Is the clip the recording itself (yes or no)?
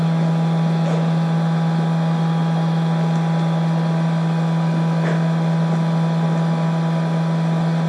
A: yes